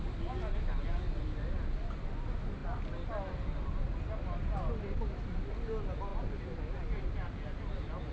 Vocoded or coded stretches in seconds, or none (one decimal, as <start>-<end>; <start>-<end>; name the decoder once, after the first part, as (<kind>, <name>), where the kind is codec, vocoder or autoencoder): none